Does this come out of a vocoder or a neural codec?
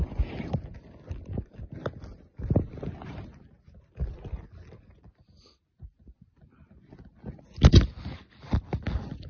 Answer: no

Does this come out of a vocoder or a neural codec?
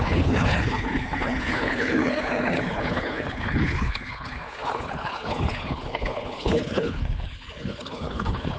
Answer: yes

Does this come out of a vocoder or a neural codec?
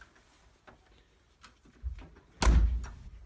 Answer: no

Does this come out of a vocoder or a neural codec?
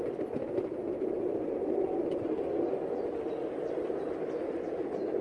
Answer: no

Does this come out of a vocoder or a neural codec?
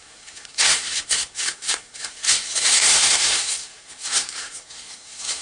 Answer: yes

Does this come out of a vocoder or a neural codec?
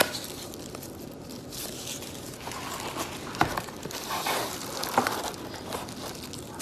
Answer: no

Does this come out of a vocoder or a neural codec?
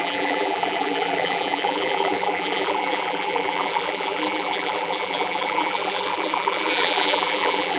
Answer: yes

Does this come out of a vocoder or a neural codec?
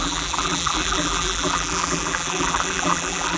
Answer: yes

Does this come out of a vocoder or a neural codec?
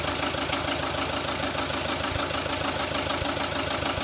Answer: no